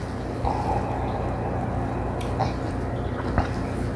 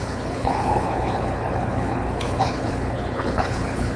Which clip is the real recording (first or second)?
first